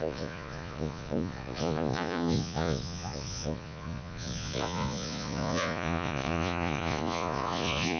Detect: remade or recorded remade